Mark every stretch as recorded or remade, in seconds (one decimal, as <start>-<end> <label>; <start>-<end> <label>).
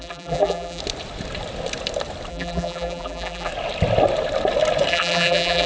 0.0-0.8 remade; 0.8-2.3 recorded; 2.3-3.5 remade; 3.5-4.9 recorded; 4.9-5.7 remade